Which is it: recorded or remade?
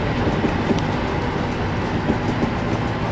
recorded